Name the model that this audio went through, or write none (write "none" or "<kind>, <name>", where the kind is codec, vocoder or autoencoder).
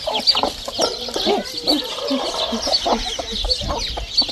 none